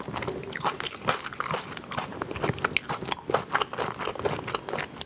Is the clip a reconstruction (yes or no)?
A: no